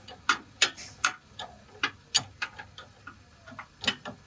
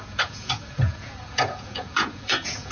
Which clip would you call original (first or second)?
first